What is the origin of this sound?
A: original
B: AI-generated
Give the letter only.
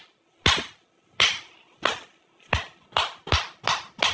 A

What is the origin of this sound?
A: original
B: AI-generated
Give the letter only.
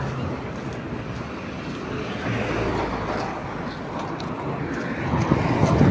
A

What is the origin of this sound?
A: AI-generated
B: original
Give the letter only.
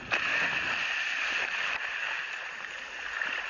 B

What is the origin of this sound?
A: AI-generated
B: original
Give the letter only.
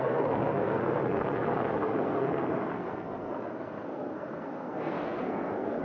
A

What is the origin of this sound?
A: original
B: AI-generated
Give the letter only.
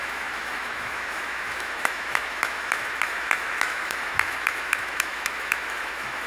B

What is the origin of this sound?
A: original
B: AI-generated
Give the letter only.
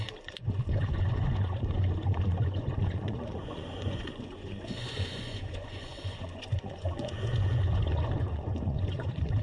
B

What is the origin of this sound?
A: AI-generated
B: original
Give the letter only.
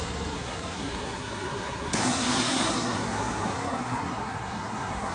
A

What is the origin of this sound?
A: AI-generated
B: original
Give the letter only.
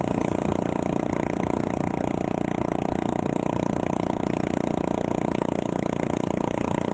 B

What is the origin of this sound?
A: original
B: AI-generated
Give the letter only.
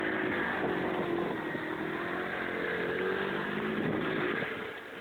A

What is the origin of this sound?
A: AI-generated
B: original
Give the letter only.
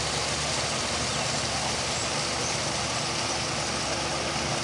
B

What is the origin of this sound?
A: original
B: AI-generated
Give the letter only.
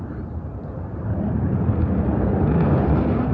B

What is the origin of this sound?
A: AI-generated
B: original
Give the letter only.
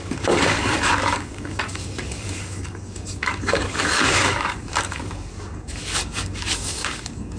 A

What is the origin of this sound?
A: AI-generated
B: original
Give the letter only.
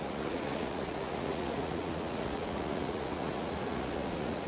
A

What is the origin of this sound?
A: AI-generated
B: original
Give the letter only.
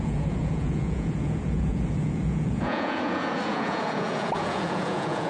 A